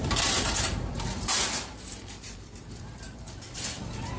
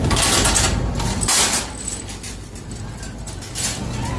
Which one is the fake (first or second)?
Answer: first